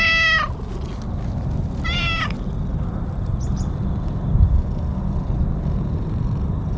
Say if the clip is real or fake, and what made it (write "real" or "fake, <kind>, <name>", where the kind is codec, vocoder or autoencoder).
real